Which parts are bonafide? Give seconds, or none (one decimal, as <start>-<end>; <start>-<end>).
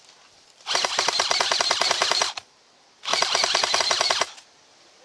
none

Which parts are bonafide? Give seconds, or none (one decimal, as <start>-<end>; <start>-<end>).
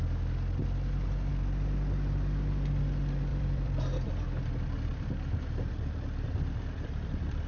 0.0-3.3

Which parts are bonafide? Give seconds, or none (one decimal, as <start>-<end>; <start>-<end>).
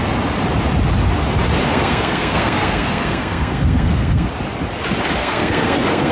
0.0-1.6; 4.3-5.2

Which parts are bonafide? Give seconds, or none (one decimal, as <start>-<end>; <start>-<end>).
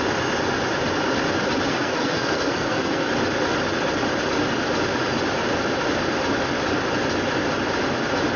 0.0-1.7; 3.1-8.4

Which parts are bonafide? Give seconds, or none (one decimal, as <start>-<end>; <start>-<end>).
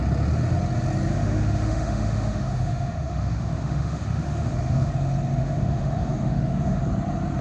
0.0-1.1; 4.9-5.4; 6.8-7.4